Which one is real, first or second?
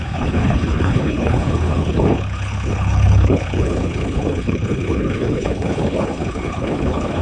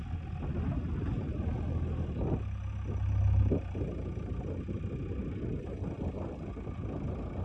second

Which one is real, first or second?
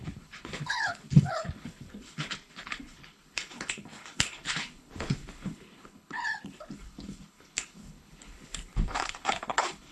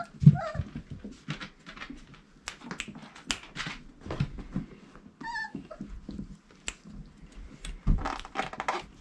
second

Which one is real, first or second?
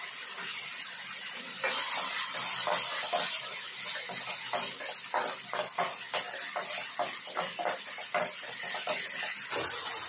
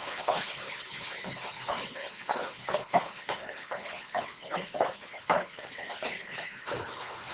first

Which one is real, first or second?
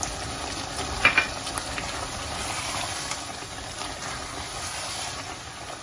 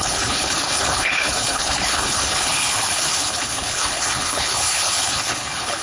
first